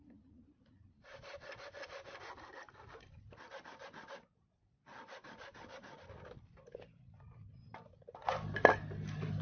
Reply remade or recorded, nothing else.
recorded